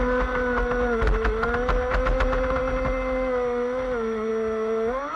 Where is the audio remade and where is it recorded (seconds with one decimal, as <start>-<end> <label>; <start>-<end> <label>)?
0.0-5.2 recorded